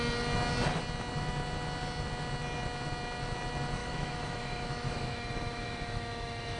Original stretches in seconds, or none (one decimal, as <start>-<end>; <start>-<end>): 0.0-3.8